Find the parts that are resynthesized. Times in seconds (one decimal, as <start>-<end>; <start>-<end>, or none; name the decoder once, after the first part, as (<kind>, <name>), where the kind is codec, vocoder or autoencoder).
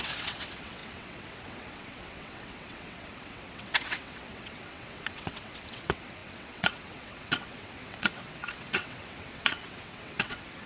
0.0-10.7 (vocoder, WaveNeXt)